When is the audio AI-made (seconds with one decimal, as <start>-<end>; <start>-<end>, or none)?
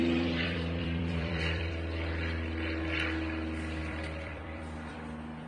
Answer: 0.0-1.7; 3.8-5.5